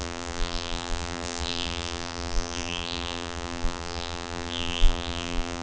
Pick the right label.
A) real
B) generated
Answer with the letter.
B